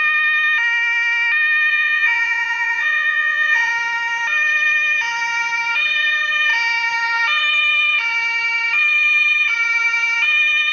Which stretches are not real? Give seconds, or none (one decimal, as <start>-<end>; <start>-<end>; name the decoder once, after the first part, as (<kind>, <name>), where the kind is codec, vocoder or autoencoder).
1.7-3.7 (vocoder, Vocos)